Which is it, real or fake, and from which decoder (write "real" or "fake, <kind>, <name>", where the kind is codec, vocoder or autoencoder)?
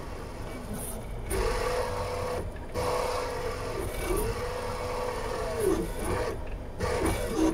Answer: real